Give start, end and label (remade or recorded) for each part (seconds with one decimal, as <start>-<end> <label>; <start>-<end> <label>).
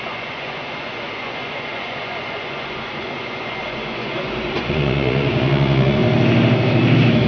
0.0-6.0 remade; 6.0-7.3 recorded